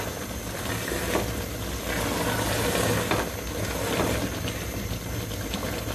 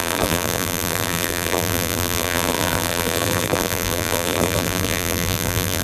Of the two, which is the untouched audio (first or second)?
first